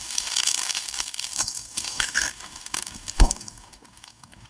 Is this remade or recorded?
remade